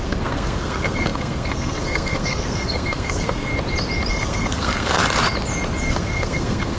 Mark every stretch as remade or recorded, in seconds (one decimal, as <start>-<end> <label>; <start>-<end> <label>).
0.0-3.5 remade; 3.5-4.1 recorded; 4.1-5.0 remade; 5.0-5.8 recorded; 5.8-6.8 remade